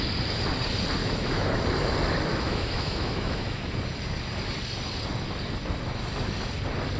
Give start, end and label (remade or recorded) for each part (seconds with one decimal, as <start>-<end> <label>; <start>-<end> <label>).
0.0-1.0 recorded; 1.0-1.6 remade; 1.6-2.3 recorded; 2.3-3.7 remade; 3.7-7.0 recorded

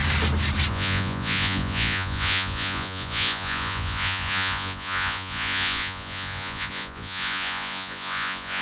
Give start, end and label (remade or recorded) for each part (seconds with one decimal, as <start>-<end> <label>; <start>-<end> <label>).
0.0-0.7 recorded; 0.7-8.6 remade

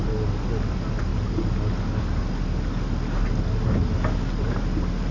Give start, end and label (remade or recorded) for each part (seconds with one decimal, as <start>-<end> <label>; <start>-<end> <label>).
0.0-5.1 recorded

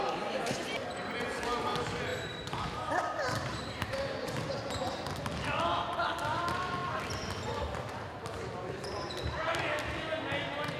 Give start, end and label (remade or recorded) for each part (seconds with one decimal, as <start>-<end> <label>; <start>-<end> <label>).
0.0-2.1 recorded; 2.1-4.8 remade; 4.8-10.8 recorded

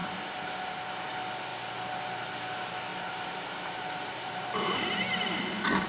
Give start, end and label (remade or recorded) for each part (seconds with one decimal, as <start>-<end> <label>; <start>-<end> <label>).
0.0-2.9 recorded; 2.9-5.4 remade; 5.4-5.9 recorded

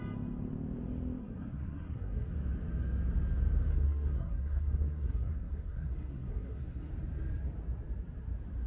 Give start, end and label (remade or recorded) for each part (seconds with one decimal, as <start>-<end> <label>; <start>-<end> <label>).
0.0-1.2 recorded; 1.2-2.3 remade; 2.3-3.7 recorded; 3.7-6.9 remade; 6.9-8.7 recorded

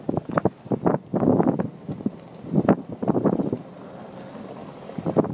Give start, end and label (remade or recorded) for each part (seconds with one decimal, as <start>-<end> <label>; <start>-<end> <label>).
0.0-4.6 recorded; 4.6-5.3 remade

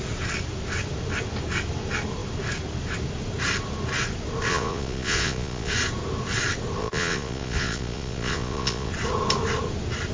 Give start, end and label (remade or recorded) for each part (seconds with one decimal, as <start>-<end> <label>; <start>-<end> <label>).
0.0-4.5 recorded; 4.5-5.7 remade; 5.7-6.8 recorded; 6.8-8.9 remade; 8.9-10.1 recorded